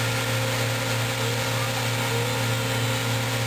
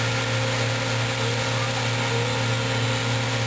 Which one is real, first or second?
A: first